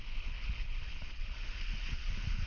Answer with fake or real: fake